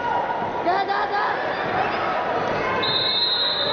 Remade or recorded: recorded